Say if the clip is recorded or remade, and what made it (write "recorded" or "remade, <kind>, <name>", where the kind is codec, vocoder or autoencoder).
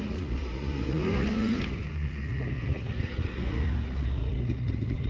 remade, vocoder, Vocos